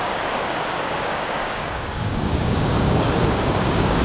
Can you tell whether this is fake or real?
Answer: fake